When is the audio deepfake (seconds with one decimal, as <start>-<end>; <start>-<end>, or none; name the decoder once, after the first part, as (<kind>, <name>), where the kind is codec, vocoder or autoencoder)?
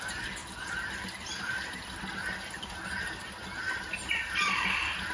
none